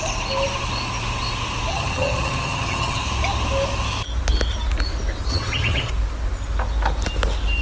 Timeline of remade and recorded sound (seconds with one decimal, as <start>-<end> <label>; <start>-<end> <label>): 0.0-1.7 recorded; 1.7-3.0 remade; 3.0-5.3 recorded; 5.3-5.9 remade; 5.9-7.6 recorded